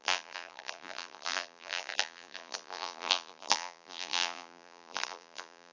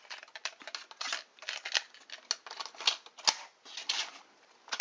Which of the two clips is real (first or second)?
second